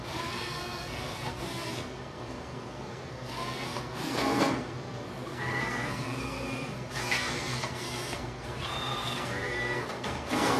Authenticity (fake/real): fake